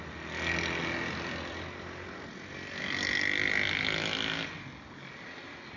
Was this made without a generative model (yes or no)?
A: yes